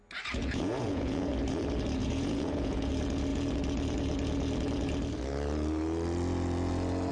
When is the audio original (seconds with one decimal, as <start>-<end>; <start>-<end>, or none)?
0.0-0.4; 1.3-2.0; 2.9-7.1